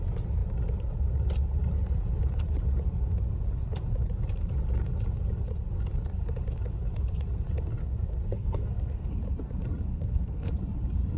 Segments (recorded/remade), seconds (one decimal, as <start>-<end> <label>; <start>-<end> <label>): 0.0-7.8 recorded; 7.8-9.1 remade; 9.1-9.9 recorded; 9.9-10.5 remade; 10.5-11.2 recorded

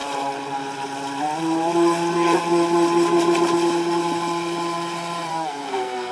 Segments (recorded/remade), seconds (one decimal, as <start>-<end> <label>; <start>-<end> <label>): 0.0-5.3 recorded; 5.3-6.1 remade